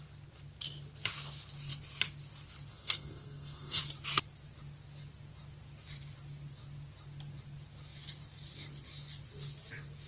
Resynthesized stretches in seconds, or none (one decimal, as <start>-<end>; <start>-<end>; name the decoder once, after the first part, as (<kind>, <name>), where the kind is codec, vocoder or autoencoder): 2.7-3.8 (codec, SNAC)